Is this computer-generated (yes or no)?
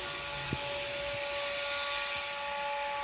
no